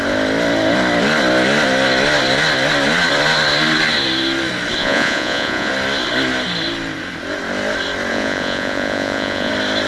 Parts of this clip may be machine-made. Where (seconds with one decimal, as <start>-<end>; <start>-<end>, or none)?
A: 4.8-5.7; 8.1-9.5